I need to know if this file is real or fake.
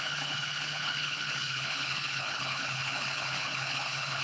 fake